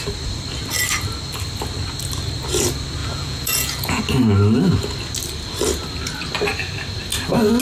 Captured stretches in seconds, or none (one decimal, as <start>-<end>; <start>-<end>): 0.0-3.0; 4.0-7.6